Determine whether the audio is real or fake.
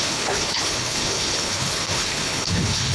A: fake